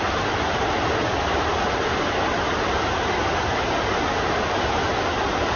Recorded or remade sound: recorded